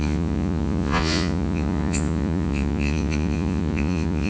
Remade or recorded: remade